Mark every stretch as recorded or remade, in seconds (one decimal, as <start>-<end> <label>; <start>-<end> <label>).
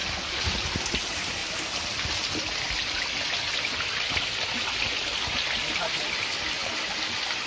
0.0-7.5 recorded